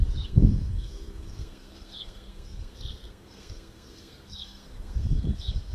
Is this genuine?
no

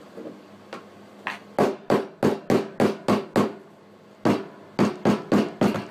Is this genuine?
yes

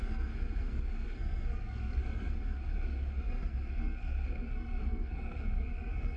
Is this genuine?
no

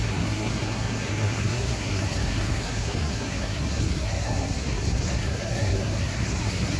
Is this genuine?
no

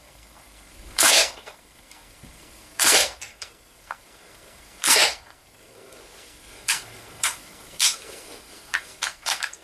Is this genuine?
no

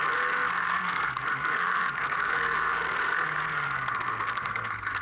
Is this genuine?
no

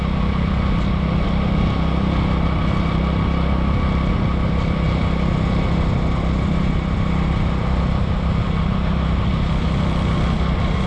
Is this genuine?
yes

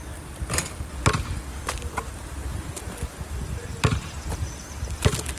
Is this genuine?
yes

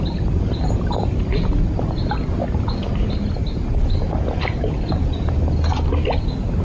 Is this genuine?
yes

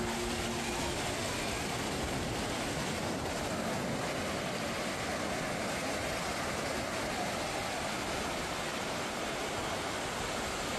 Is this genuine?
yes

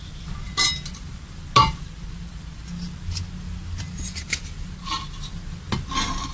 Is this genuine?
yes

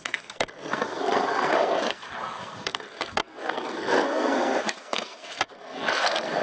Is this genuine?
no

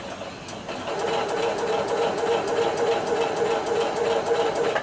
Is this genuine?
yes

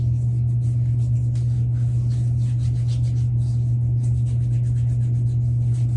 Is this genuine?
yes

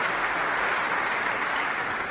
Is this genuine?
yes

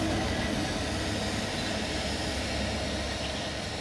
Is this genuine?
yes